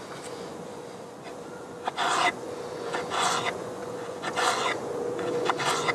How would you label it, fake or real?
fake